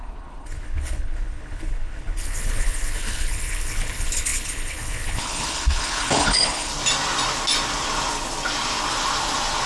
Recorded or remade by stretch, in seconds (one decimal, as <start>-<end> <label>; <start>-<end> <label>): 0.0-6.7 remade; 6.7-9.7 recorded